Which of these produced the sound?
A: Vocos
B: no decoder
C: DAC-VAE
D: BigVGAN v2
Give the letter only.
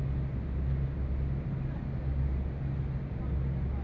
B